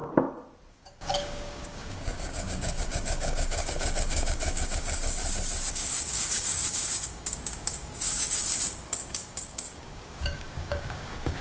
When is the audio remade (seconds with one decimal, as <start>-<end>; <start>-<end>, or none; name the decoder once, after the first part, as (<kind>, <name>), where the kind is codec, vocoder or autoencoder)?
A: 0.7-5.2 (codec, DAC); 5.7-11.4